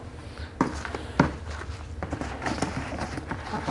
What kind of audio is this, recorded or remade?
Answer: recorded